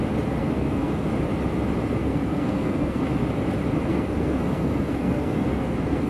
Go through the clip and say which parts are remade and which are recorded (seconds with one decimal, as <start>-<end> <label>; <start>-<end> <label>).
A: 0.0-0.4 recorded; 0.4-1.1 remade; 1.1-2.0 recorded; 2.0-3.0 remade; 3.0-3.9 recorded; 3.9-6.1 remade